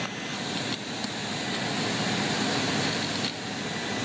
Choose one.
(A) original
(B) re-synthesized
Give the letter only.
A